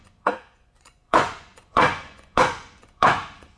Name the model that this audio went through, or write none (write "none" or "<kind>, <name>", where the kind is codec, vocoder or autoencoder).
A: vocoder, Vocos